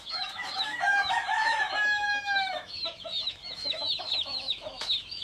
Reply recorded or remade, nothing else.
remade